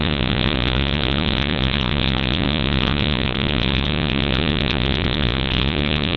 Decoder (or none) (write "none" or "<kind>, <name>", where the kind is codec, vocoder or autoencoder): vocoder, Vocos